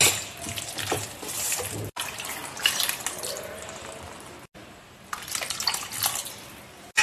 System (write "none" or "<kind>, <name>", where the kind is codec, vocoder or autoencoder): none